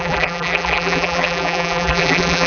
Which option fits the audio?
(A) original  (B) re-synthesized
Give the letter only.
B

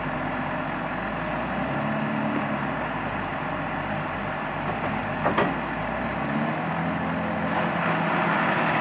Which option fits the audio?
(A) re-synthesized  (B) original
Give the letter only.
B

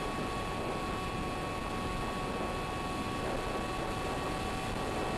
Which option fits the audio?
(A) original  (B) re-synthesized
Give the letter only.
A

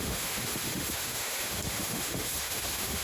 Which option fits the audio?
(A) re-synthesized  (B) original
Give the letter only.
A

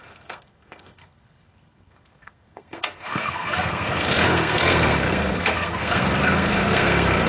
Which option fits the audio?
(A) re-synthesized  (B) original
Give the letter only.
A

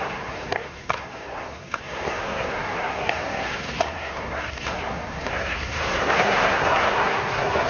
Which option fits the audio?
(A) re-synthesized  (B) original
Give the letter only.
A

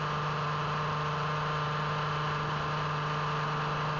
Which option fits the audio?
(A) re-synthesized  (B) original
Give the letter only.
B